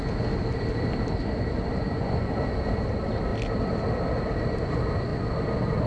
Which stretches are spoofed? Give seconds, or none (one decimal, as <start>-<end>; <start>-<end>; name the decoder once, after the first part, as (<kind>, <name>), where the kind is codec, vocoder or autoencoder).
1.8-2.3 (vocoder, Vocos)